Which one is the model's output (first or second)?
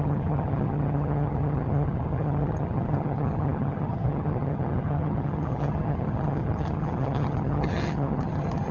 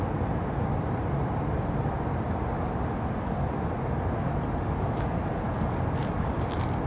first